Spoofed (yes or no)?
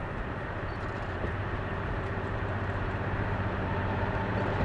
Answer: yes